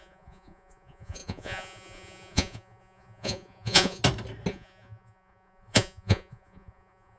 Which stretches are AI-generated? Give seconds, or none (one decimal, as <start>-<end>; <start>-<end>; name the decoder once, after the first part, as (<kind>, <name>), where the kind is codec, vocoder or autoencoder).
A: 0.0-4.0 (vocoder, Vocos); 4.5-7.2